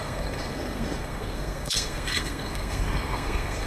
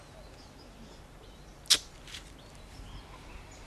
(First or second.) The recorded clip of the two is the second